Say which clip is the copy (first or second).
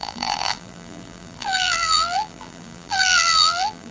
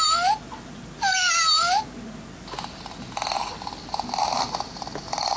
first